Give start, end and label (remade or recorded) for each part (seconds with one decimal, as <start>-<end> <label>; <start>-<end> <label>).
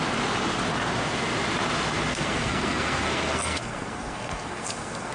0.0-2.1 recorded; 2.1-5.1 remade